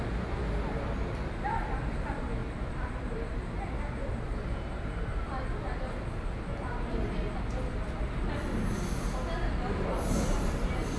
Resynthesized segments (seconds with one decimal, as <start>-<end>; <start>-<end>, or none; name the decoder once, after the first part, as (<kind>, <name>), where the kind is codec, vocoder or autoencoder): 2.4-5.4 (vocoder, BigVGAN v2)